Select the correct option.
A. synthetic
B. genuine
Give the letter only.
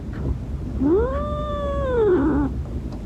B